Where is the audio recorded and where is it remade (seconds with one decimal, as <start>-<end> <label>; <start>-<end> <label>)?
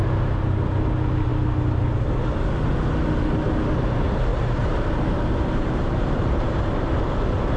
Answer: 0.0-4.3 recorded; 4.3-6.8 remade; 6.8-7.6 recorded